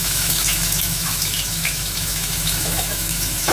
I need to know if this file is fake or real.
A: fake